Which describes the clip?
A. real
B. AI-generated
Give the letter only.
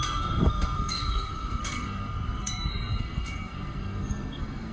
B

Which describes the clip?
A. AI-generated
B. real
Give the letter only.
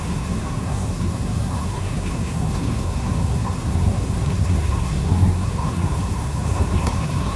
A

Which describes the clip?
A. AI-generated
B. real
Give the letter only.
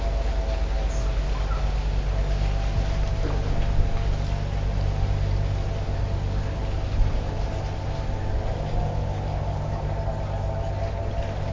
B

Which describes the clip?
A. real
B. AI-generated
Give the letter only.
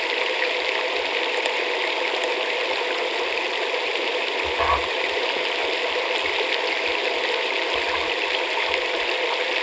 A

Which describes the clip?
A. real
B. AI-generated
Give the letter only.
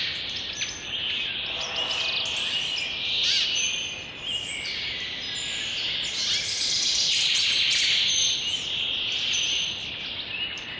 A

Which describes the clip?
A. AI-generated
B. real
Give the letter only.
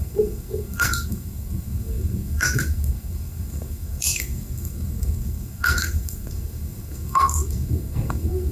A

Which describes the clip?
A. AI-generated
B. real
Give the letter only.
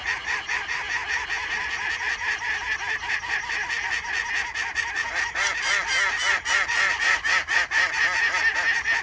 B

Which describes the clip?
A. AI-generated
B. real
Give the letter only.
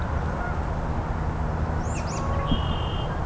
B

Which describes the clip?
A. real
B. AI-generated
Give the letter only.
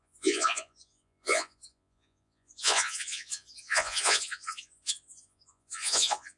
B